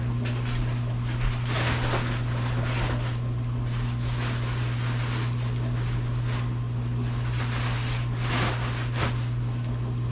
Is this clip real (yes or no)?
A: yes